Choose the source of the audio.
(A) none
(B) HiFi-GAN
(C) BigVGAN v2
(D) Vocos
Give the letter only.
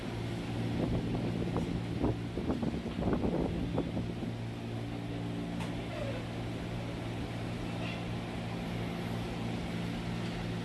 A